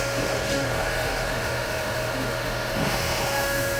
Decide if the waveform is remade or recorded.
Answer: remade